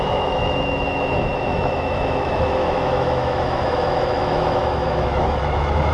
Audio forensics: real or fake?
fake